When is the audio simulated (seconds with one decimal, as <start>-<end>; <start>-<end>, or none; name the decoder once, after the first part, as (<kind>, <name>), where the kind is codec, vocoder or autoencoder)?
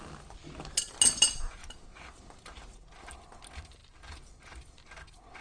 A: none